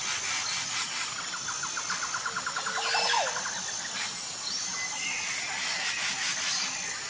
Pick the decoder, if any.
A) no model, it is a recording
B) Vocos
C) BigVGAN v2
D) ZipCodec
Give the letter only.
A